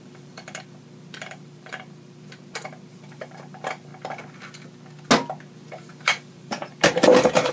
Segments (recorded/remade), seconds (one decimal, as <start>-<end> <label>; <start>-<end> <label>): 0.0-3.9 remade; 3.9-5.4 recorded; 5.4-7.5 remade